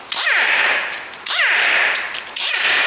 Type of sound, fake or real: fake